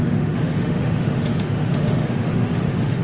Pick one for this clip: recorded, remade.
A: remade